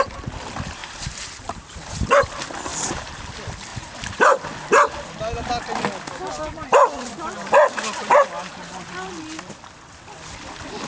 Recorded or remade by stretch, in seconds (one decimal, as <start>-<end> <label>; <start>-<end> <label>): 0.0-0.8 recorded; 0.8-2.0 remade; 2.0-2.7 recorded; 2.7-3.3 remade; 3.3-10.9 recorded